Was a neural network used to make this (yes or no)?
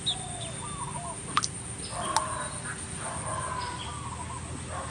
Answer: no